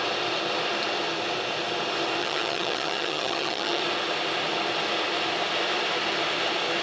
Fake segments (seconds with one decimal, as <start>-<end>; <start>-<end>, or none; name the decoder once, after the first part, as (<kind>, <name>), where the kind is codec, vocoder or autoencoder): 2.2-3.8 (vocoder, HiFi-GAN)